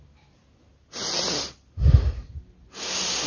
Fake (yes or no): no